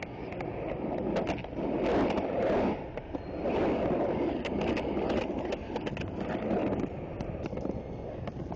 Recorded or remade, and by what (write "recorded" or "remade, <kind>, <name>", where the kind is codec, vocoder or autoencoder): recorded